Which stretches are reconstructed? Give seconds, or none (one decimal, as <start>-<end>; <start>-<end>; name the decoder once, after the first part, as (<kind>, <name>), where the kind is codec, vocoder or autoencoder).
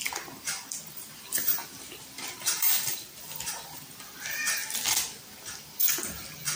0.0-1.6 (vocoder, BigVGAN v2); 2.4-4.6; 5.2-6.6